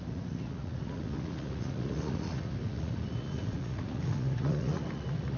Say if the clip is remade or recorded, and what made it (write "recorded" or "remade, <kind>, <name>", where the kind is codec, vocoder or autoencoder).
remade, vocoder, Vocos